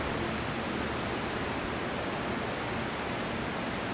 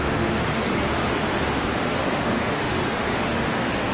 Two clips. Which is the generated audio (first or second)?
second